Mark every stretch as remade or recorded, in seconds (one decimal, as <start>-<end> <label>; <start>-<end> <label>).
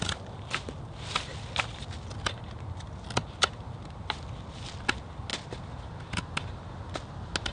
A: 0.0-7.5 recorded